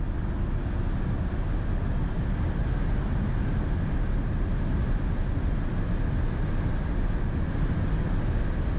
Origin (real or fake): real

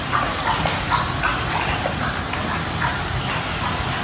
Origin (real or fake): real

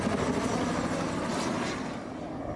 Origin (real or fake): real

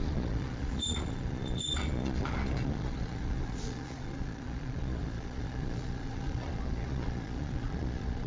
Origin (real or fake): fake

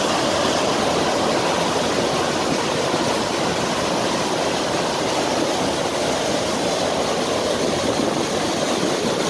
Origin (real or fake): real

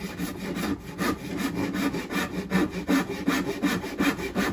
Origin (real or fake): real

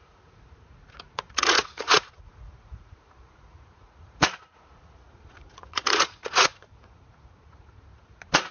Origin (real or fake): fake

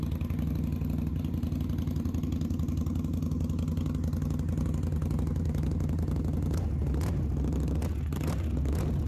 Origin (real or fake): real